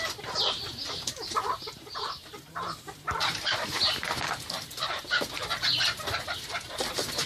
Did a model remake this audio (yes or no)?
yes